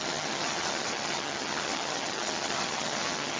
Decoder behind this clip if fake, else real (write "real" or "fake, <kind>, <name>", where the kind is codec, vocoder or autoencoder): fake, vocoder, HiFi-GAN